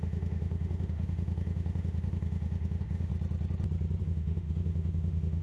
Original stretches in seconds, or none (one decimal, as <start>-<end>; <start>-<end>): 3.1-4.0